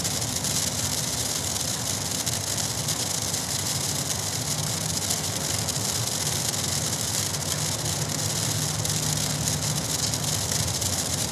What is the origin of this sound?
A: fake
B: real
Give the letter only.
B